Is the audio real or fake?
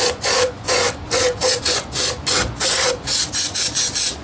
fake